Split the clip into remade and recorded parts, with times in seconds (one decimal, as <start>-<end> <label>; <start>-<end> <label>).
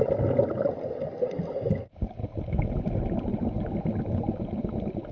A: 0.0-5.1 recorded